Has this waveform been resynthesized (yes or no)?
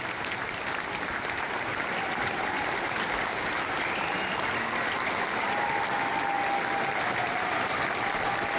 no